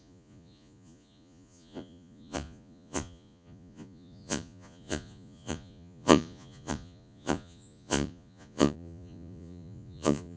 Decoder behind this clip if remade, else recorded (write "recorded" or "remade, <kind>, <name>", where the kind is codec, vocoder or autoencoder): remade, vocoder, Vocos